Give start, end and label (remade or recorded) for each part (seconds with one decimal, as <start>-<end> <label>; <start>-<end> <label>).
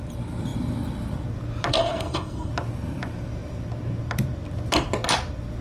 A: 0.0-1.7 recorded; 1.7-2.5 remade; 2.5-5.6 recorded